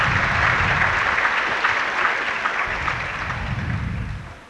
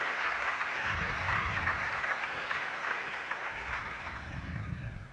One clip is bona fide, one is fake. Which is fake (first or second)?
second